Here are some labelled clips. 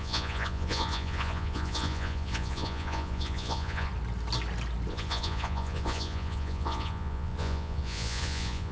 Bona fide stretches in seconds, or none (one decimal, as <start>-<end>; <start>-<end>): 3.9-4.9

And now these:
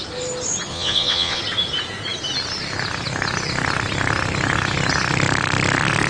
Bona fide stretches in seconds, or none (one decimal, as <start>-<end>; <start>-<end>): 0.0-0.7; 1.4-6.1

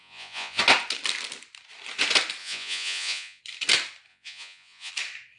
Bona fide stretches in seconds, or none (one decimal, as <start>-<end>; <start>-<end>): 0.6-2.4; 3.4-4.1; 4.9-5.4